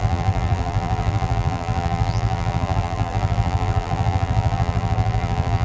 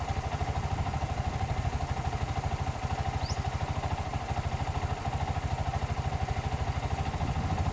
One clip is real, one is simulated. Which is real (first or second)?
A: second